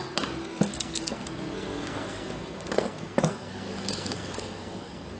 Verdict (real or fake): fake